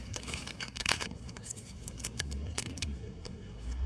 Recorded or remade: remade